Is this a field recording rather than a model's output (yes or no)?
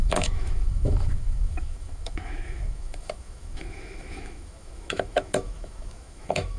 no